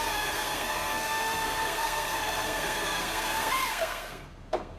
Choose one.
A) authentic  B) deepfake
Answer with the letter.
B